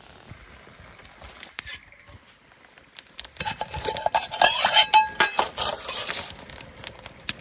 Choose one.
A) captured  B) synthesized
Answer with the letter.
A